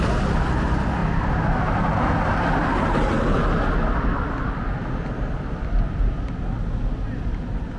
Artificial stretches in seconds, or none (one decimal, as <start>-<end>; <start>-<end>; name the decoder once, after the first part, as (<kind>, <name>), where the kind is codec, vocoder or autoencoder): none